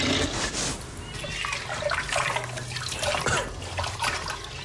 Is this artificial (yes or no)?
no